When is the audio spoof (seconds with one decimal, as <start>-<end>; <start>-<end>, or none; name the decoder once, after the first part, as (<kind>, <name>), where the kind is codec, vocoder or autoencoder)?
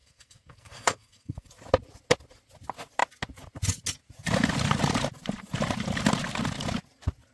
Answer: 0.0-1.5 (codec, SNAC)